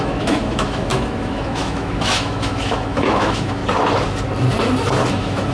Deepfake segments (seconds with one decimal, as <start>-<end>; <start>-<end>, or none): 0.0-3.6; 5.1-5.5